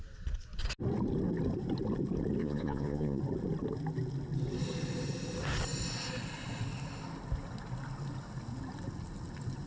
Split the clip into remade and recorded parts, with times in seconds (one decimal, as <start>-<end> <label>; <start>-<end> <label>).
0.0-2.4 recorded; 2.4-3.2 remade; 3.2-9.7 recorded